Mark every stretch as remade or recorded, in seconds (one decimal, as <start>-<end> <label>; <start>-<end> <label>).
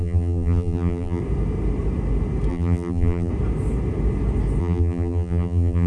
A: 0.0-1.2 remade; 1.2-2.5 recorded; 2.5-3.3 remade; 3.3-4.6 recorded; 4.6-5.9 remade